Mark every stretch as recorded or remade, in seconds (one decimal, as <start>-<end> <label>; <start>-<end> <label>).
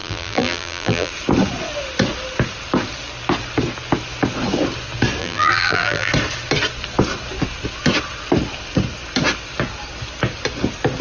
0.0-1.1 remade; 1.1-5.2 recorded; 5.2-6.1 remade; 6.1-11.0 recorded